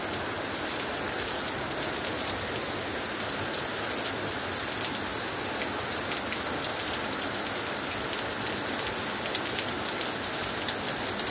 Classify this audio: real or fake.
real